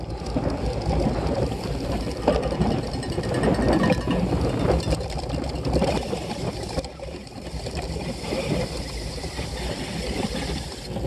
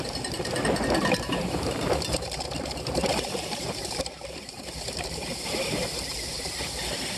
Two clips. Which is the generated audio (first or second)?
second